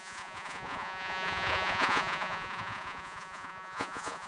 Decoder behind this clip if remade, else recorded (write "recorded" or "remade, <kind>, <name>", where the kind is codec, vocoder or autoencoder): remade, vocoder, Vocos